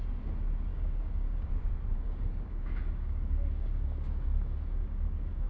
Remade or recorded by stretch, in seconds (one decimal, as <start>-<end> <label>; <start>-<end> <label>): 0.0-0.7 recorded; 0.7-1.5 remade; 1.5-1.9 recorded; 1.9-5.5 remade